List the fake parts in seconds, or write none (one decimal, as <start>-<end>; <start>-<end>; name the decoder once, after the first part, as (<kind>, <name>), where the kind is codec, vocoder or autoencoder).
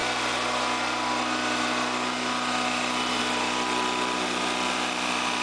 none